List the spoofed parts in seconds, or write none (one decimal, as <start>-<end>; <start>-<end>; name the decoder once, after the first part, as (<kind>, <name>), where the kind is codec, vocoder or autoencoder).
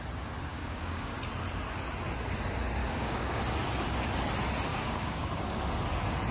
0.5-1.1 (codec, DAC); 2.8-3.4; 4.7-5.3